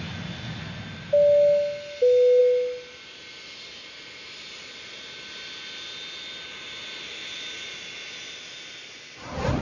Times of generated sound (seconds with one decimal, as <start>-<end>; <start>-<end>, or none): none